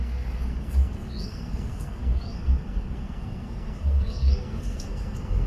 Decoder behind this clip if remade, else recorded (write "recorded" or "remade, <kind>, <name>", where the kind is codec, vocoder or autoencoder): remade, codec, SNAC